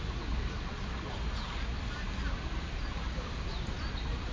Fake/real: real